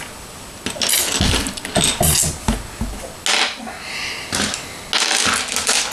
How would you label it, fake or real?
real